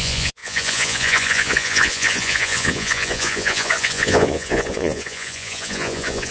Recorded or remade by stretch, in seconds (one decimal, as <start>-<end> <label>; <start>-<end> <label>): 0.0-6.3 remade